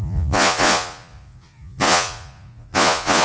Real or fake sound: fake